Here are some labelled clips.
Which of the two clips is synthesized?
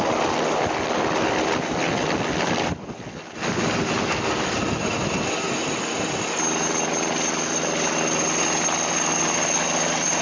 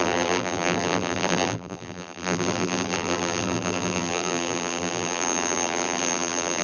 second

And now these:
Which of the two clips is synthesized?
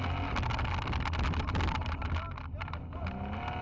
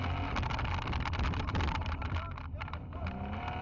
second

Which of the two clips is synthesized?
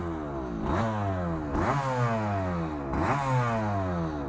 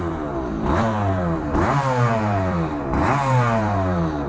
second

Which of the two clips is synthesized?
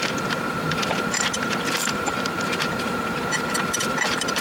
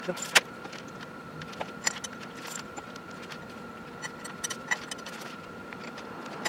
first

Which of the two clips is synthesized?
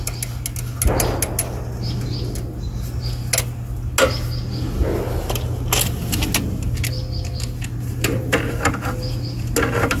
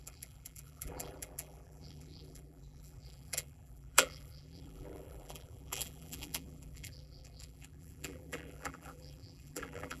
second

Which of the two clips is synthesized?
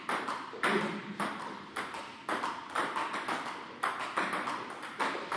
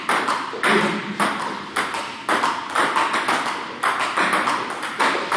first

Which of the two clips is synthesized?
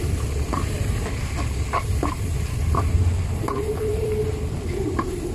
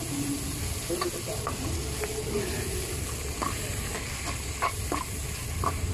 first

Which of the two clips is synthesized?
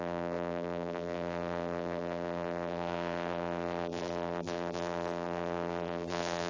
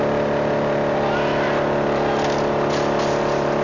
first